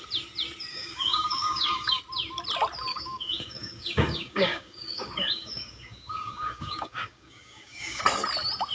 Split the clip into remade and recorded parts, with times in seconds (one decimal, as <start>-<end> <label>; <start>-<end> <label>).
0.0-0.7 recorded; 0.7-2.0 remade; 2.0-2.9 recorded; 2.9-8.0 remade; 8.0-8.7 recorded

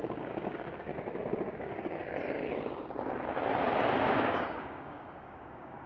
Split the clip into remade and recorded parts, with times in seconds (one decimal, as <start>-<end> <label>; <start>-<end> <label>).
0.0-0.9 remade; 0.9-1.6 recorded; 1.6-2.0 remade; 2.0-4.0 recorded; 4.0-5.9 remade

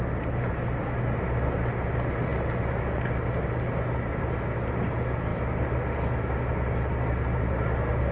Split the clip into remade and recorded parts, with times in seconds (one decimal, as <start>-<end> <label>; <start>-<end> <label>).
0.0-8.1 recorded

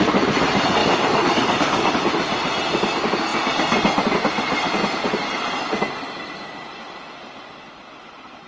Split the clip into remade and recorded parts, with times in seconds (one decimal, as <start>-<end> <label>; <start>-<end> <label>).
0.0-0.8 recorded; 0.8-1.9 remade; 1.9-8.5 recorded